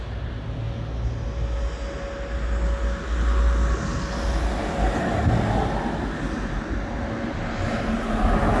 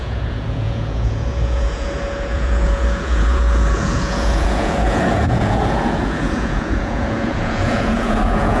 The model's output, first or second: second